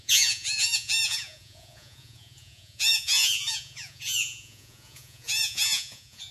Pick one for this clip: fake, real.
fake